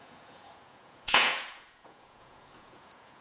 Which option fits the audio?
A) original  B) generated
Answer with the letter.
B